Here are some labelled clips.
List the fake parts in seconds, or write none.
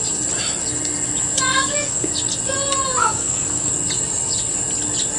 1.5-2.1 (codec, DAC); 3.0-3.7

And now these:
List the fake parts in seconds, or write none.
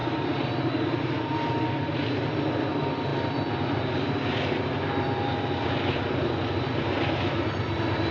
none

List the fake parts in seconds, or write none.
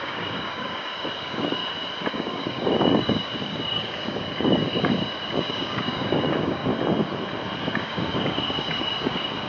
0.0-1.6 (codec, DAC); 2.1-6.7; 7.6-9.5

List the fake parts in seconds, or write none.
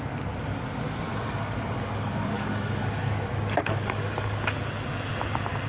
1.1-4.5 (codec, DAC)